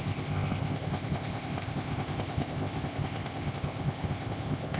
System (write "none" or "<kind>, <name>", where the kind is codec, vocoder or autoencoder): codec, ZipCodec